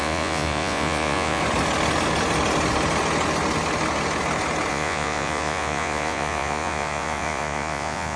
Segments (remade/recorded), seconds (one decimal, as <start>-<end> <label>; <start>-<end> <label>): 0.0-1.4 remade; 1.4-4.7 recorded; 4.7-8.2 remade